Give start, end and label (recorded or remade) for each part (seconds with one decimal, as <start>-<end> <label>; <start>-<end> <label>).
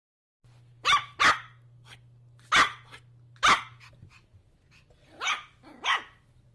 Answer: 0.0-6.5 recorded